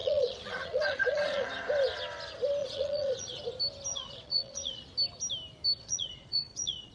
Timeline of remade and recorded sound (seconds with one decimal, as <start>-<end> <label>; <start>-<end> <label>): 0.0-1.5 remade; 1.5-2.6 recorded; 2.6-3.4 remade; 3.4-3.9 recorded; 3.9-4.8 remade; 4.8-5.8 recorded; 5.8-6.9 remade